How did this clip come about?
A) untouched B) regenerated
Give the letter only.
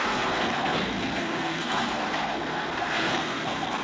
B